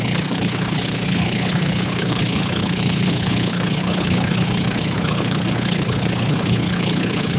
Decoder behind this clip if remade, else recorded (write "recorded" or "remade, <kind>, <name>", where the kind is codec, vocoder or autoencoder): remade, codec, HILCodec